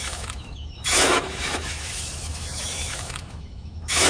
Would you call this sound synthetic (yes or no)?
yes